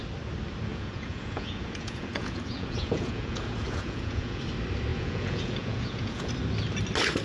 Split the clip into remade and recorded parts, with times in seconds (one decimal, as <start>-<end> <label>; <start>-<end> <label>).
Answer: 0.0-0.7 recorded; 0.7-4.4 remade; 4.4-4.9 recorded; 4.9-6.3 remade; 6.3-7.2 recorded